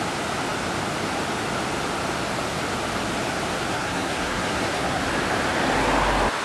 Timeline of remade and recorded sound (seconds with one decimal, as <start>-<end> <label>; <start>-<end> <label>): 0.0-3.7 recorded; 3.7-5.0 remade; 5.0-6.4 recorded